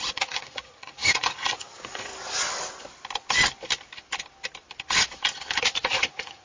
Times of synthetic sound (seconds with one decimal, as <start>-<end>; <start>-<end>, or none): 0.0-2.1; 5.6-6.4